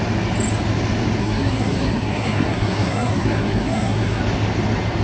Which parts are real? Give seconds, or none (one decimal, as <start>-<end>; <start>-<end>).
0.0-1.2; 4.2-5.0